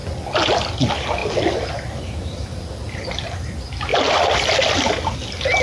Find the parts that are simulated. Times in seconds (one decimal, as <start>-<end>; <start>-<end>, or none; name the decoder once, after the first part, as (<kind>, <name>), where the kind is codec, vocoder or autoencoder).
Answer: none